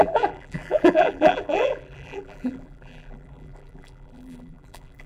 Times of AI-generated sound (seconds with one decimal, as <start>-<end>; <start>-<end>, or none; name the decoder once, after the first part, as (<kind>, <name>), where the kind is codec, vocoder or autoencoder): 0.0-5.1 (vocoder, BigVGAN v2)